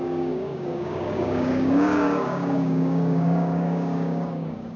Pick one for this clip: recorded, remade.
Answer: remade